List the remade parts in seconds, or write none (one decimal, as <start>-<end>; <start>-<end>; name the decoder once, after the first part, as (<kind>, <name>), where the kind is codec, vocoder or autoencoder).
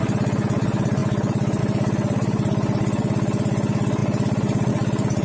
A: none